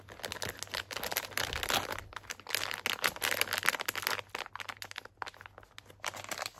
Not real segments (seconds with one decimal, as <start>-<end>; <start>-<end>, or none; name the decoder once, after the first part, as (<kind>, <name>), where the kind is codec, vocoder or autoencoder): none